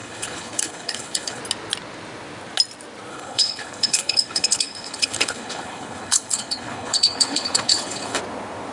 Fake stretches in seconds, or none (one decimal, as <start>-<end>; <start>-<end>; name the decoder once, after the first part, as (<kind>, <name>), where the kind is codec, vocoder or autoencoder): 0.0-1.4 (codec, HILCodec); 3.1-8.2